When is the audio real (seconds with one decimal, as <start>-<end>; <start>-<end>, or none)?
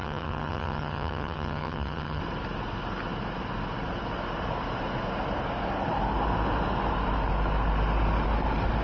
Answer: 2.2-8.8